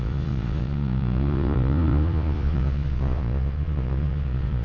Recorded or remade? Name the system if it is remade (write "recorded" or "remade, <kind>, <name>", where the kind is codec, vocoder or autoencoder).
remade, vocoder, Vocos